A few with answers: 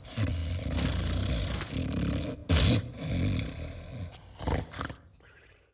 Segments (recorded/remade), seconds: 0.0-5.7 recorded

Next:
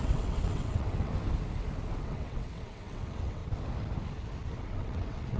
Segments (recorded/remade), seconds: 0.0-1.1 remade; 1.1-2.0 recorded; 2.0-3.4 remade; 3.4-4.6 recorded; 4.6-5.4 remade